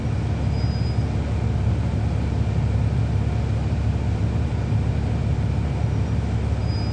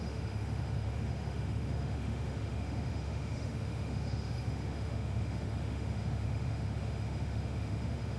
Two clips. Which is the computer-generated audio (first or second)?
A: second